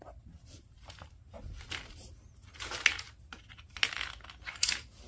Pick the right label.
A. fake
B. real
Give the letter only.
B